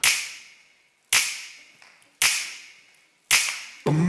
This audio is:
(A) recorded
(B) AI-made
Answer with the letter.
A